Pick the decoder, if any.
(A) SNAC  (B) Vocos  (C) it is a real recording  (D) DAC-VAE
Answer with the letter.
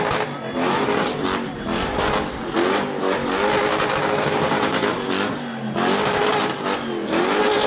C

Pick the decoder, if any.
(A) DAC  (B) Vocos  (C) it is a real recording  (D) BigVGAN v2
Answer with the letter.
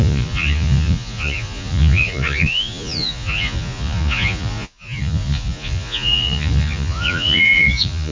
B